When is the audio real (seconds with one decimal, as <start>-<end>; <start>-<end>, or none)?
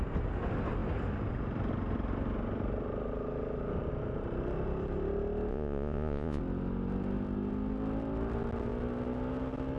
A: 0.0-5.5; 6.4-9.8